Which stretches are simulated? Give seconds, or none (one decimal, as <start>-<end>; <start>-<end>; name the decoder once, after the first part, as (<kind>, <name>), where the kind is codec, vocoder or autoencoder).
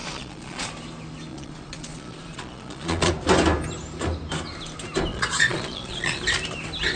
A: 0.0-0.7 (vocoder, Vocos); 1.3-3.1; 5.1-6.2